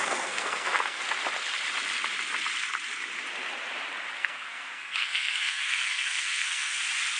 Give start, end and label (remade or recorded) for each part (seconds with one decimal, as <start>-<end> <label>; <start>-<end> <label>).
0.0-1.0 remade; 1.0-4.2 recorded; 4.2-6.8 remade; 6.8-7.2 recorded